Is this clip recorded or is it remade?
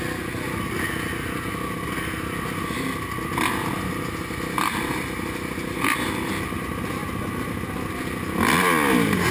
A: recorded